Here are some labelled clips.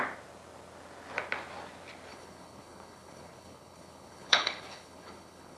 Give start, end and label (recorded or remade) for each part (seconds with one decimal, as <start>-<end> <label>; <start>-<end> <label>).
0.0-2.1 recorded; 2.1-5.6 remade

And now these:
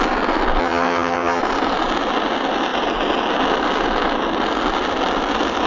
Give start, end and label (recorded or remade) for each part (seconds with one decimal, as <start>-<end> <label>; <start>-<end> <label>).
0.0-0.6 recorded; 0.6-1.4 remade; 1.4-5.7 recorded

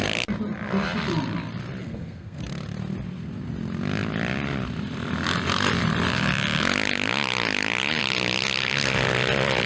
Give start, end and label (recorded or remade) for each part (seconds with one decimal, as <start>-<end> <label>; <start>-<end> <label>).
0.0-1.8 recorded; 1.8-2.4 remade; 2.4-9.7 recorded

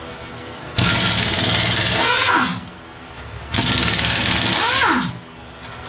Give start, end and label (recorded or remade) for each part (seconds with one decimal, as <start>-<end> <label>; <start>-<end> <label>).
0.0-4.5 remade; 4.5-5.1 recorded; 5.1-5.9 remade

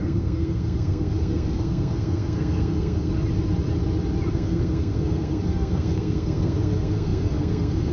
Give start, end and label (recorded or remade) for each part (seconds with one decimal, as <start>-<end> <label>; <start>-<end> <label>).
0.0-3.1 remade; 3.1-4.3 recorded; 4.3-7.9 remade

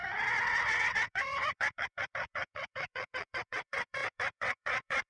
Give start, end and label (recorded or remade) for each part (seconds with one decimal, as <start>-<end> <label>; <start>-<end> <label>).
0.0-5.1 remade

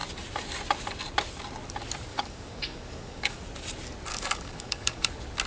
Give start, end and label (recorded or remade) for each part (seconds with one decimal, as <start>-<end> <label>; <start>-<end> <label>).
0.0-2.1 recorded; 2.1-3.4 remade; 3.4-4.1 recorded; 4.1-5.1 remade; 5.1-5.5 recorded

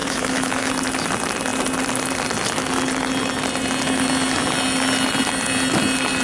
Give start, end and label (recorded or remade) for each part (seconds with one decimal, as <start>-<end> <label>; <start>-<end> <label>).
0.0-0.7 remade; 0.7-6.2 recorded